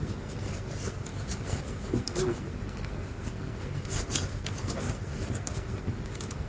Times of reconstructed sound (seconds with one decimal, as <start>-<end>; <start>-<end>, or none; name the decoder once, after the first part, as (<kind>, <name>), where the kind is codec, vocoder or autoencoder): 0.0-6.5 (codec, SNAC)